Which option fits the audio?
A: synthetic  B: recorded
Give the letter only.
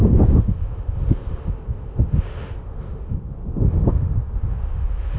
A